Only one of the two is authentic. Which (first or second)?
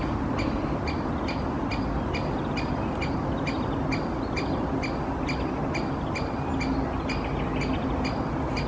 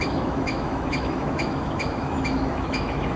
first